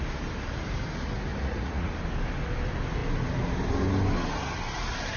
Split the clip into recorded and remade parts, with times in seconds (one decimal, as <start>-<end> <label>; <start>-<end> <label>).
0.0-1.3 recorded; 1.3-1.9 remade; 1.9-5.2 recorded